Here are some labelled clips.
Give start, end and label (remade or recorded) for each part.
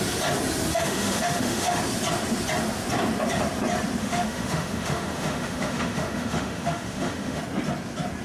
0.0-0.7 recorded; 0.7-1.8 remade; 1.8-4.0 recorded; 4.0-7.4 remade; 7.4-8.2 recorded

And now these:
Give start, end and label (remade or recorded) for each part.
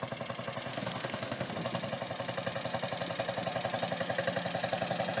0.0-0.7 recorded; 0.7-1.5 remade; 1.5-5.2 recorded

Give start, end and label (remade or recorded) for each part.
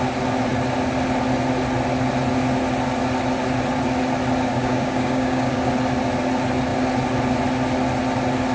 0.0-4.5 recorded; 4.5-5.7 remade; 5.7-8.5 recorded